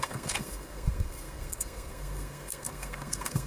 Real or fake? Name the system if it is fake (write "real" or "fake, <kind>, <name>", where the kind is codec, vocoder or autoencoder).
fake, codec, SNAC